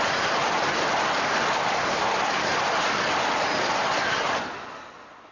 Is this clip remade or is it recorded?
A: recorded